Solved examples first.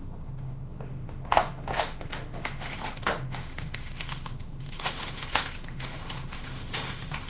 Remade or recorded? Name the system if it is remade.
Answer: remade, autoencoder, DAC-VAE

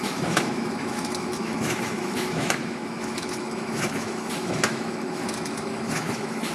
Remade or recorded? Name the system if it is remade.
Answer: remade, autoencoder, DAC-VAE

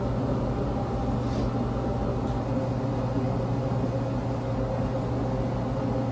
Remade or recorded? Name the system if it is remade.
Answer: recorded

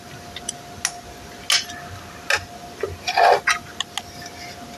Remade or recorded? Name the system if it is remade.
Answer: recorded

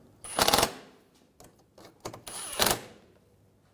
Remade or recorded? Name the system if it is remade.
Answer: recorded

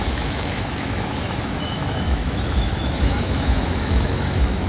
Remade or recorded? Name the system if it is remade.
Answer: remade, autoencoder, DAC-VAE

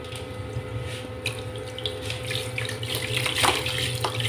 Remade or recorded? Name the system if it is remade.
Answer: recorded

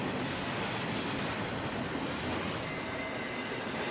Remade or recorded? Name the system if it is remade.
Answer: recorded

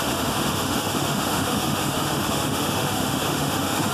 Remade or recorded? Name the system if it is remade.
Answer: remade, autoencoder, DAC-VAE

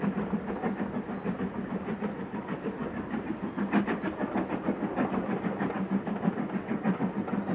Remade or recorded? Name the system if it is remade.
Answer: recorded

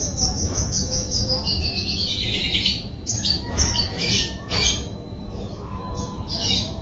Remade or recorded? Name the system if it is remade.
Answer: remade, autoencoder, DAC-VAE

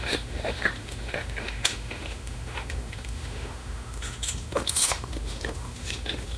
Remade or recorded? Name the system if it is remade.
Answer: remade, autoencoder, DAC-VAE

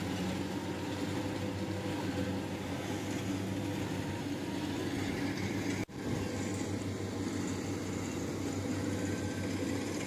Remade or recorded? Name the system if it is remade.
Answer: recorded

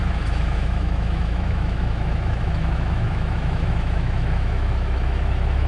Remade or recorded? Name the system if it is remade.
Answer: remade, autoencoder, DAC-VAE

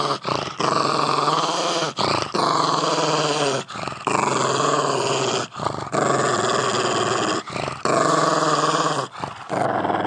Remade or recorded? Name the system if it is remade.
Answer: recorded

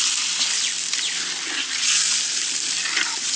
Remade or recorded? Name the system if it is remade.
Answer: recorded